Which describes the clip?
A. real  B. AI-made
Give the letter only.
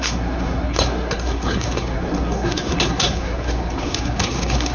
B